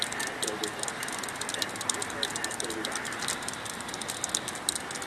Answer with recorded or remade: recorded